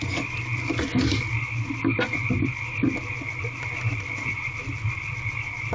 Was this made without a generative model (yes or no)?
yes